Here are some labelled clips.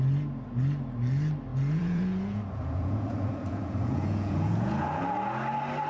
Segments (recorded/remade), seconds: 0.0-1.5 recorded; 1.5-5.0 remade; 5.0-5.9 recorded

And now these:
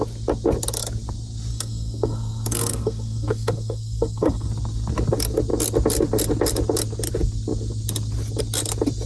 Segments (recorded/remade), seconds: 0.0-1.5 recorded; 1.5-4.5 remade; 4.5-9.1 recorded

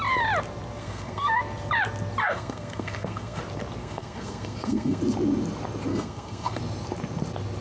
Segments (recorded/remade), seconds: 0.0-0.8 recorded; 0.8-1.4 remade; 1.4-2.2 recorded; 2.2-3.4 remade; 3.4-3.8 recorded; 3.8-5.0 remade; 5.0-5.9 recorded; 5.9-6.6 remade; 6.6-7.6 recorded

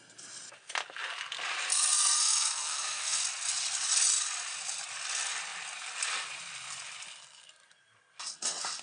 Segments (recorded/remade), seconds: 0.0-1.7 recorded; 1.7-3.2 remade; 3.2-8.8 recorded

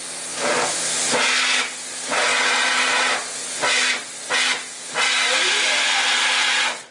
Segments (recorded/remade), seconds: 0.0-6.9 recorded

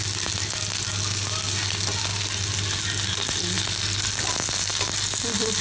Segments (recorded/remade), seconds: 0.0-5.6 recorded

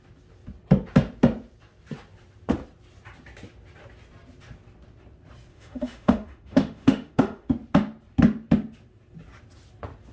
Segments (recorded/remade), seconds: 0.0-5.5 recorded; 5.5-7.5 remade; 7.5-10.1 recorded

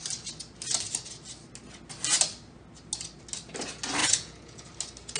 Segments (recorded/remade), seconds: 0.0-4.0 recorded; 4.0-4.7 remade; 4.7-5.2 recorded